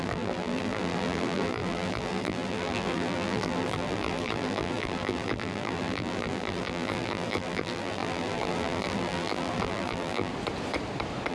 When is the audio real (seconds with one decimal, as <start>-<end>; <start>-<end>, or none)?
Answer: 10.3-11.3